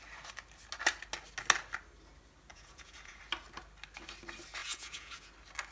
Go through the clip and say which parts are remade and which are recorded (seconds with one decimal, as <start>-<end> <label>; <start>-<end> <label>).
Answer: 0.0-2.5 recorded; 2.5-3.2 remade; 3.2-4.6 recorded; 4.6-5.3 remade; 5.3-5.7 recorded